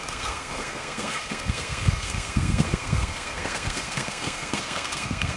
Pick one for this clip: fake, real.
fake